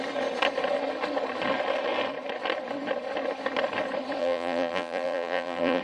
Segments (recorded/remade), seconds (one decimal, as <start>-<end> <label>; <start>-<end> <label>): 0.0-4.2 recorded; 4.2-5.8 remade